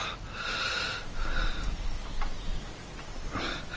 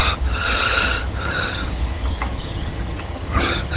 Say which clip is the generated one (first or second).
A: second